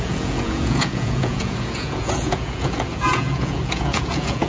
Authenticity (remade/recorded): remade